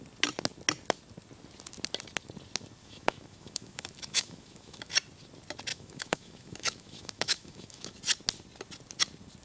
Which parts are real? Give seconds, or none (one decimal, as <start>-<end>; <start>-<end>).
0.0-2.8; 4.9-5.7; 8.0-9.4